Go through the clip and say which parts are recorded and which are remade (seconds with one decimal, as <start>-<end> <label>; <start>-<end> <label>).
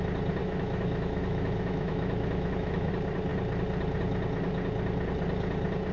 0.0-0.4 recorded; 0.4-2.9 remade; 2.9-5.9 recorded